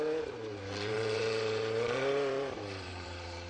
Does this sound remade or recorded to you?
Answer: remade